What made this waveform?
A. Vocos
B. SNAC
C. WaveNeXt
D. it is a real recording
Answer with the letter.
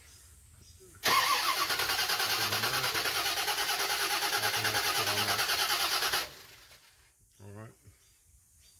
D